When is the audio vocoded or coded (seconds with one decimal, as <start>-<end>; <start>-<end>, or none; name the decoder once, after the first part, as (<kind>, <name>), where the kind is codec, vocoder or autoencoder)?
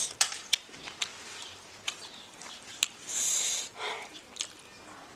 1.1-4.2 (vocoder, BigVGAN v2)